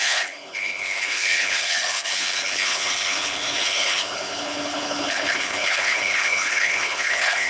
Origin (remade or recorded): remade